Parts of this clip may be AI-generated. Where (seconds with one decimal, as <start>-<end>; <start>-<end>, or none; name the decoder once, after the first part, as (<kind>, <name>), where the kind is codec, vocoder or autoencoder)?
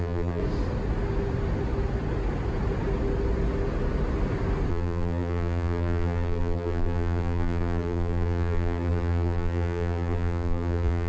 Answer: 0.0-0.4 (vocoder, BigVGAN v2); 4.7-11.1